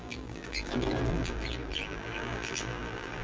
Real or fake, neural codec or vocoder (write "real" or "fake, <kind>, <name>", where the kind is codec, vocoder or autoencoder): fake, vocoder, BigVGAN v2